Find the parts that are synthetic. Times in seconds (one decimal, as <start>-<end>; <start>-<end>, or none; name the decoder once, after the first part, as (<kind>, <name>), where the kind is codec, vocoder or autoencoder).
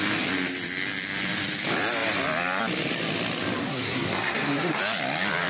3.6-4.8 (codec, SNAC)